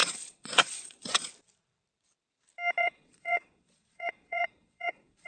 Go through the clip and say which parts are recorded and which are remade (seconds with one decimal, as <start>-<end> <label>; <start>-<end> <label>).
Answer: 0.0-1.3 remade; 1.3-2.8 recorded; 2.8-5.3 remade